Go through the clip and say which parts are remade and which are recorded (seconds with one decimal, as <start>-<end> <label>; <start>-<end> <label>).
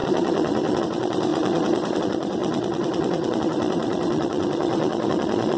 0.0-5.6 remade